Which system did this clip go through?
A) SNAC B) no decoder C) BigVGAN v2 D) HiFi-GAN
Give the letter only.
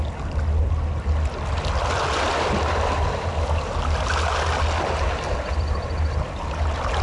B